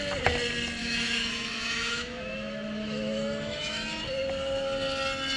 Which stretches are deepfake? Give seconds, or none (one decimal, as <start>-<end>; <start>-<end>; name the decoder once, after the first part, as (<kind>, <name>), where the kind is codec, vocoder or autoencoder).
0.8-4.0 (autoencoder, DAC-VAE)